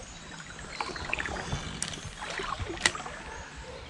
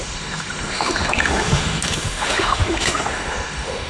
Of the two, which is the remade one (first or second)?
second